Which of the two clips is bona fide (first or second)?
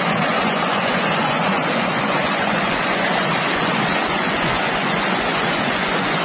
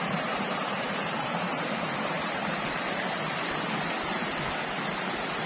second